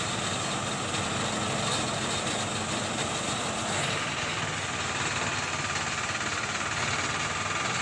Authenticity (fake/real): real